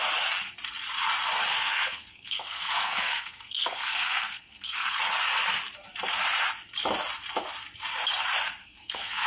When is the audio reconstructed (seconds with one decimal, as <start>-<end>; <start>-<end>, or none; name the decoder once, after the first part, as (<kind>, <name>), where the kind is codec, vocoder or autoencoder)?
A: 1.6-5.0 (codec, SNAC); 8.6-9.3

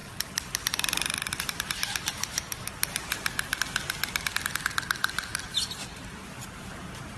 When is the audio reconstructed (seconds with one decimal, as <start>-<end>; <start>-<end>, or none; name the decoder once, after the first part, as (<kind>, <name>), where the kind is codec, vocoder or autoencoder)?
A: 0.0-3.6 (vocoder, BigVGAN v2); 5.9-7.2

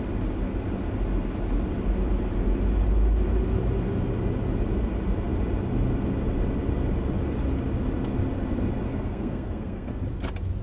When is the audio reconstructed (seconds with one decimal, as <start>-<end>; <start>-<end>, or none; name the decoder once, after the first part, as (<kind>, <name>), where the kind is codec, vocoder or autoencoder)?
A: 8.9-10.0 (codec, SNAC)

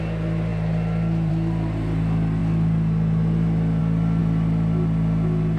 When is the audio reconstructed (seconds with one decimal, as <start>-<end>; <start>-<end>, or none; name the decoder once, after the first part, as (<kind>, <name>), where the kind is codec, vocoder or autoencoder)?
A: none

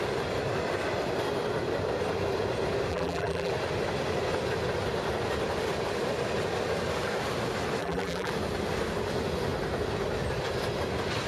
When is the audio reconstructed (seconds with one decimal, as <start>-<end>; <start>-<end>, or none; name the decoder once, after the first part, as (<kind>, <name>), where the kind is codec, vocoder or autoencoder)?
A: 2.9-3.5 (vocoder, BigVGAN v2); 7.8-8.3